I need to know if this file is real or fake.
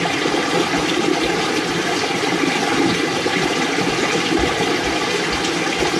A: real